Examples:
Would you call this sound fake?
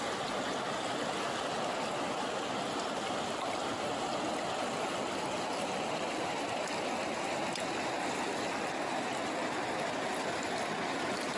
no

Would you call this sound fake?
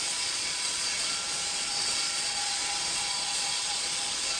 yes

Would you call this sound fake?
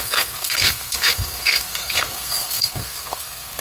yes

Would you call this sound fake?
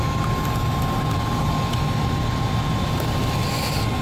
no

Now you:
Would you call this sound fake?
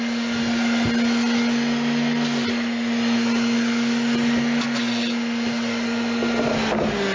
no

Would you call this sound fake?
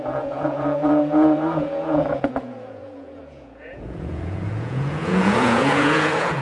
yes